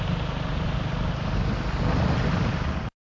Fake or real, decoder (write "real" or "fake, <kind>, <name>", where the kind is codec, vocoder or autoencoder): real